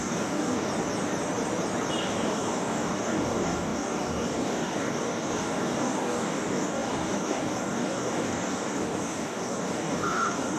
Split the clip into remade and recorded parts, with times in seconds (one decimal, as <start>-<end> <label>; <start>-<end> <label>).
0.0-0.7 remade; 0.7-2.0 recorded; 2.0-10.6 remade